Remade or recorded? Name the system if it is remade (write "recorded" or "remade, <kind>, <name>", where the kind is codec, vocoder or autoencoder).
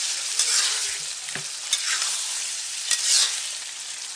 recorded